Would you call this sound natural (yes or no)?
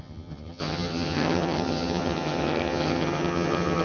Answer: no